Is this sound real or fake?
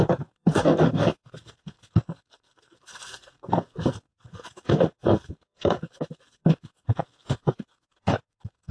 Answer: fake